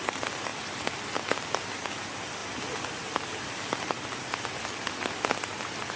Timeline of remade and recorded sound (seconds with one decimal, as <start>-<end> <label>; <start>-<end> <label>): 0.0-6.0 recorded

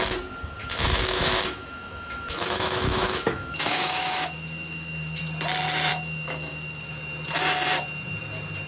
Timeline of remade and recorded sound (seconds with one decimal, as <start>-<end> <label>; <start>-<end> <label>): 0.0-0.6 recorded; 0.6-5.2 remade; 5.2-5.9 recorded; 5.9-6.9 remade; 6.9-8.7 recorded

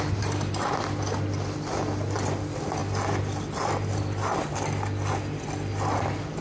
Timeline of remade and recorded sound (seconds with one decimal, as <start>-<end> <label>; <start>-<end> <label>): 0.0-2.8 remade; 2.8-3.7 recorded; 3.7-6.4 remade

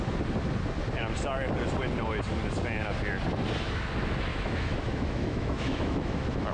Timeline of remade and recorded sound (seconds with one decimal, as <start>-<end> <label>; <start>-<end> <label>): 0.0-4.3 recorded; 4.3-6.5 remade

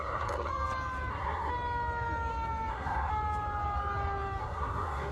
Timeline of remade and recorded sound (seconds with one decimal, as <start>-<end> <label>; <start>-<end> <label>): 0.0-0.5 remade; 0.5-1.1 recorded; 1.1-1.5 remade; 1.5-2.7 recorded; 2.7-3.1 remade; 3.1-4.4 recorded; 4.4-5.1 remade

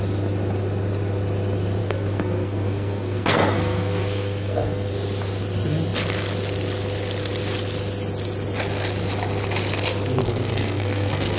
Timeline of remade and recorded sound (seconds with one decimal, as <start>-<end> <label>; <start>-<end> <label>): 0.0-1.8 recorded; 1.8-4.9 remade; 4.9-10.2 recorded; 10.2-11.4 remade

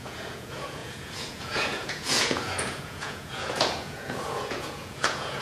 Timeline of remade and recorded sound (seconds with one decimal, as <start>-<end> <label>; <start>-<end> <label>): 0.0-5.4 remade

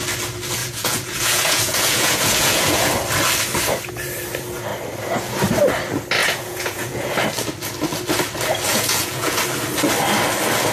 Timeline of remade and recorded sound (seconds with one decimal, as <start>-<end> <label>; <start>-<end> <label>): 0.0-0.6 recorded; 0.6-2.9 remade; 2.9-6.2 recorded; 6.2-7.1 remade; 7.1-8.7 recorded; 8.7-9.4 remade; 9.4-10.7 recorded